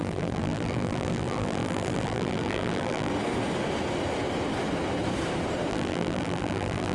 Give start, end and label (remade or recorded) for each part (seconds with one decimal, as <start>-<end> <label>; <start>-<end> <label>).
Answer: 0.0-3.1 remade; 3.1-5.7 recorded; 5.7-6.9 remade